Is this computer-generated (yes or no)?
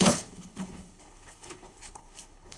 yes